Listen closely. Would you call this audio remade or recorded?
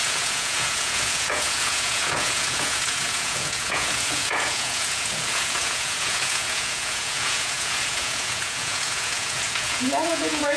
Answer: remade